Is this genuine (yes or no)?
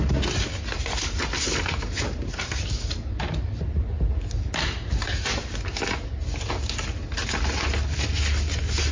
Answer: yes